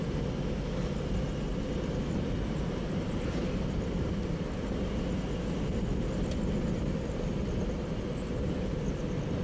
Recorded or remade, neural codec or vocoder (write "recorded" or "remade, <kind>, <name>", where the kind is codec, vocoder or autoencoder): recorded